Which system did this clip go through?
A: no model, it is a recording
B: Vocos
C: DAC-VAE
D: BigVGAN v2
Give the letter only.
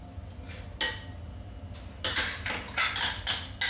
A